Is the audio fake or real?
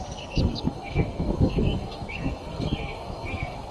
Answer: fake